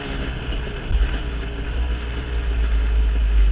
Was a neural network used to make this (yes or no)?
no